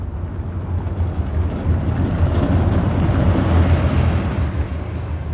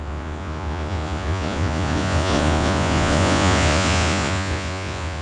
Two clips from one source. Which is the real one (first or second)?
first